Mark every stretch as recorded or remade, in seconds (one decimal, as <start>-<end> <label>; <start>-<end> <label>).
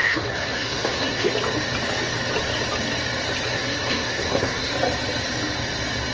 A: 0.0-1.3 remade; 1.3-3.5 recorded; 3.5-4.7 remade; 4.7-6.1 recorded